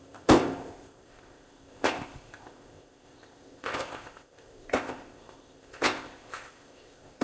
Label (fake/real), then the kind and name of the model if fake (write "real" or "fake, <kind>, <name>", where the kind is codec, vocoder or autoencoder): fake, codec, ZipCodec